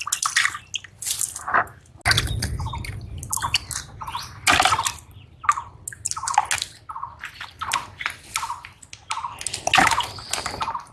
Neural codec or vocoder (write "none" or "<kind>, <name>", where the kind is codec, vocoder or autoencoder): none